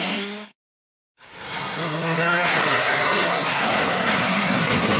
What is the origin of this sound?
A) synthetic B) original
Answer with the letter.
A